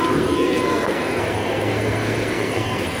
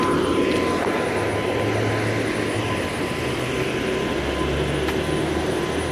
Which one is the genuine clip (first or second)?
second